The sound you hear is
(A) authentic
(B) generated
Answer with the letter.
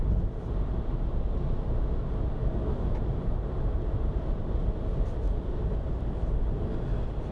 A